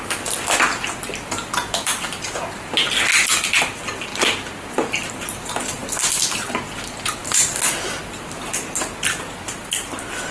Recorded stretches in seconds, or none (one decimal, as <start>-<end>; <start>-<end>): 0.0-7.2; 8.0-10.3